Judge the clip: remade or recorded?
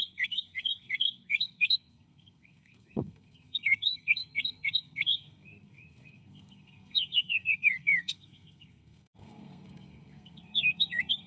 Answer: remade